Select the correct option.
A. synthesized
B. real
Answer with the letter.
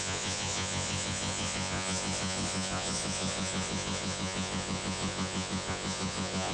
A